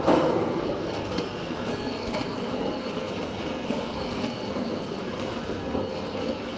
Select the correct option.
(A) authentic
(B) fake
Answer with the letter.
B